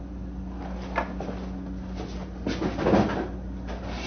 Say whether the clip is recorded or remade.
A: recorded